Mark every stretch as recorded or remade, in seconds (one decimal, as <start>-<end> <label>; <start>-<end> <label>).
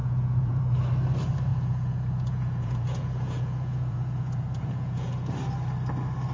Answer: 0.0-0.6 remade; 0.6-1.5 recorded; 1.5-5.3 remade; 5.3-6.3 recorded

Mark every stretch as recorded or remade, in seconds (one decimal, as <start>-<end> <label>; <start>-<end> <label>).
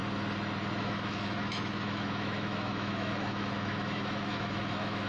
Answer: 0.0-0.8 recorded; 0.8-5.1 remade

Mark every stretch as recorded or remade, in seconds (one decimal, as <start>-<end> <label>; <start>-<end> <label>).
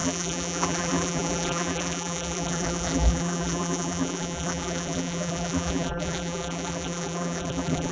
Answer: 0.0-7.9 remade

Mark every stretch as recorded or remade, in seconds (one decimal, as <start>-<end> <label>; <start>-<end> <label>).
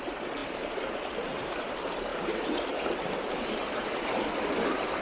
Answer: 0.0-5.0 remade